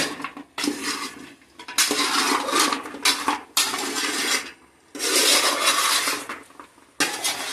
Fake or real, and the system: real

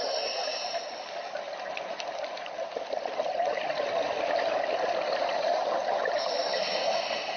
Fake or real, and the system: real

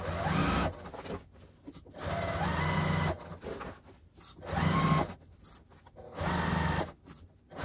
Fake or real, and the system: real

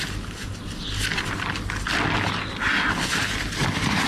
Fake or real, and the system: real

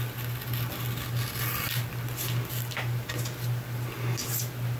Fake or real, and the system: real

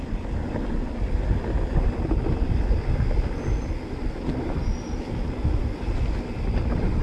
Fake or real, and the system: real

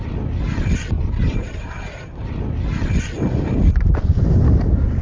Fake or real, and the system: real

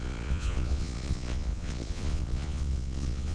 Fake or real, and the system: fake, vocoder, Vocos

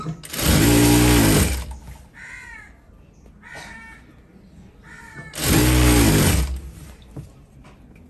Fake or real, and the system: real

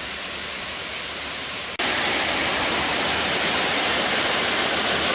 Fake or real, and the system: real